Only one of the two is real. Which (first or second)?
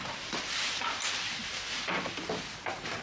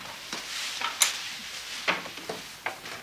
second